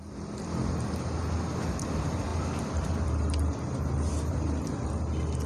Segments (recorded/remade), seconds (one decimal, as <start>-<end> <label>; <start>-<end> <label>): 0.0-5.5 recorded